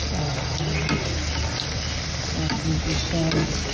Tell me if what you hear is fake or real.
real